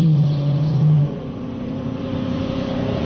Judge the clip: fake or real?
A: fake